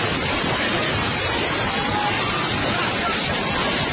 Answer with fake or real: real